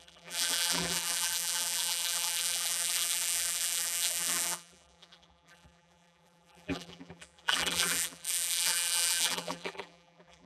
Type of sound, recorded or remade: remade